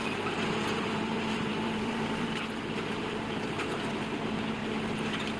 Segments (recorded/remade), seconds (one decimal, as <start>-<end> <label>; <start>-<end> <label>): 0.0-4.6 remade; 4.6-5.4 recorded